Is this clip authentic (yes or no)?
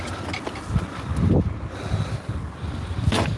yes